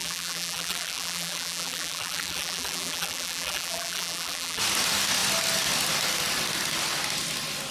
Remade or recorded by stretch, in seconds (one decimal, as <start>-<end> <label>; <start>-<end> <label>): 0.0-4.6 remade; 4.6-7.7 recorded